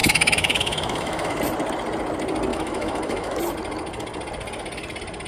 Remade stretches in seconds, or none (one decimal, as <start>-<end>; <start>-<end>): 0.0-1.4; 2.5-3.4